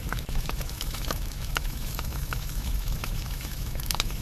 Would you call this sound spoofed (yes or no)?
yes